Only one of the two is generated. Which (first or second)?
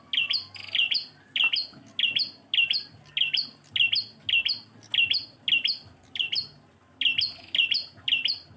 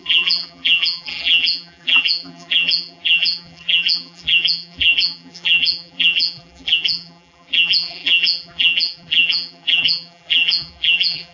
second